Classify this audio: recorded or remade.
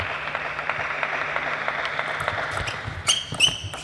recorded